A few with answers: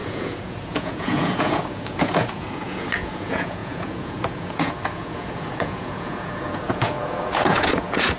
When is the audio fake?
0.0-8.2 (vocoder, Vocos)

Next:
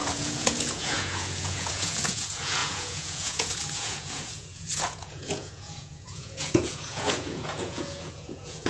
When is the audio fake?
0.0-8.7 (vocoder, Vocos)

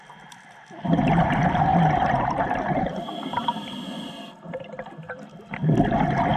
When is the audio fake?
none

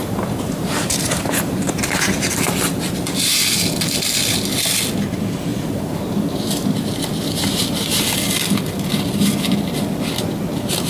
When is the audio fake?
0.0-2.5 (vocoder, BigVGAN v2); 5.5-8.1

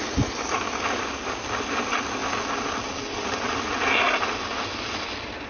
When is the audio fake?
none

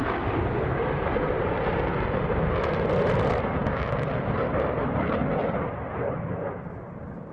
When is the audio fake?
none

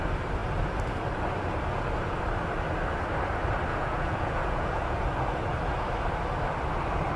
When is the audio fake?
3.7-5.0 (vocoder, Vocos)

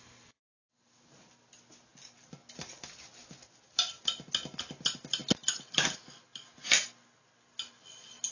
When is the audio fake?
none